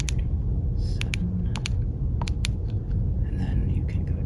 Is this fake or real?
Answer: real